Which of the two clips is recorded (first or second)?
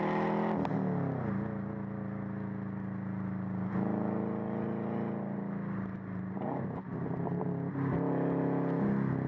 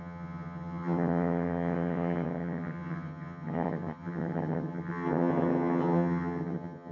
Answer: first